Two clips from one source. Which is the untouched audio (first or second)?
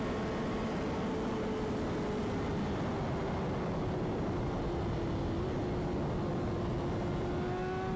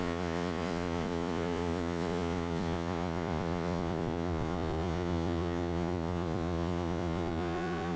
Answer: first